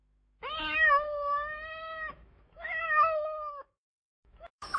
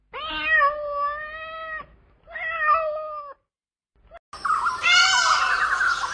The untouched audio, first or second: second